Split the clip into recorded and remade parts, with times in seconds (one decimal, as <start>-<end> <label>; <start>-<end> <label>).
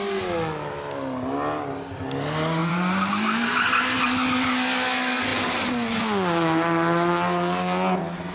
0.0-2.6 recorded; 2.6-3.1 remade; 3.1-5.3 recorded; 5.3-6.0 remade; 6.0-8.3 recorded